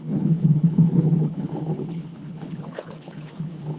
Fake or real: fake